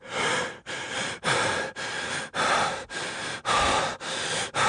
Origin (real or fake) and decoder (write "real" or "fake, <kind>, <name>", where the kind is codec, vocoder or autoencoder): real